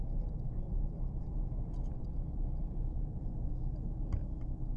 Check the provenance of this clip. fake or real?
real